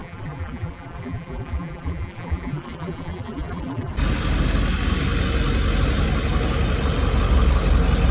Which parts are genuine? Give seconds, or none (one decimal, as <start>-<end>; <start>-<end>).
3.9-8.1